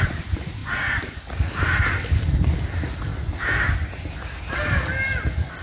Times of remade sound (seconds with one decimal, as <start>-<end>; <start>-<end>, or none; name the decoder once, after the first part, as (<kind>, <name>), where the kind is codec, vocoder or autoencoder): none